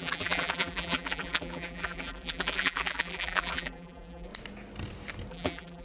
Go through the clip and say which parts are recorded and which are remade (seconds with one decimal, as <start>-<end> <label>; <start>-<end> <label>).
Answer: 0.0-4.3 remade; 4.3-5.3 recorded; 5.3-5.8 remade